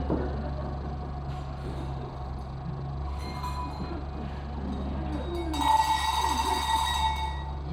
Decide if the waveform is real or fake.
real